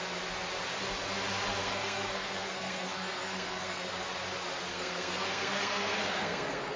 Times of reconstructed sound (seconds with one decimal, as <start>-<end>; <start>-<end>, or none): 1.6-3.9; 4.7-6.8